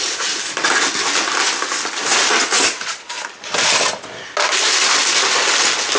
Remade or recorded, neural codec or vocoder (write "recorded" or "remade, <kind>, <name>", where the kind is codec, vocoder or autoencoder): recorded